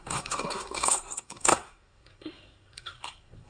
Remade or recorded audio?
remade